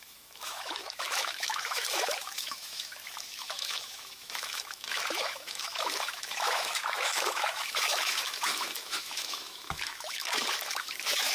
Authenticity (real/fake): fake